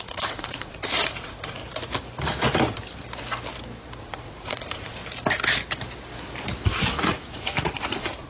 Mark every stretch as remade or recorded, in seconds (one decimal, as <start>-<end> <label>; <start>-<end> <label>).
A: 0.0-1.6 remade; 1.6-4.0 recorded; 4.0-5.0 remade; 5.0-6.8 recorded; 6.8-8.3 remade